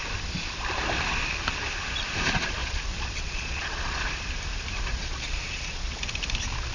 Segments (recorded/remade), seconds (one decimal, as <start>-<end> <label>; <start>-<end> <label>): 0.0-2.6 recorded; 2.6-4.0 remade; 4.0-4.9 recorded; 4.9-6.0 remade; 6.0-6.7 recorded